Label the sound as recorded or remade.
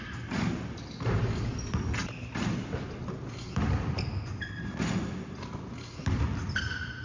recorded